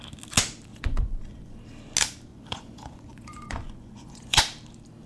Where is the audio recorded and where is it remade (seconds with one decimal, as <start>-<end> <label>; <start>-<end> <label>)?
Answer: 0.0-0.7 recorded; 0.7-1.6 remade; 1.6-2.3 recorded; 2.3-4.4 remade; 4.4-5.1 recorded